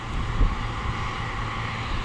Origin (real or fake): real